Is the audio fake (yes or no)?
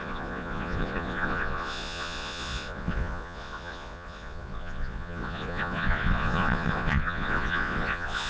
yes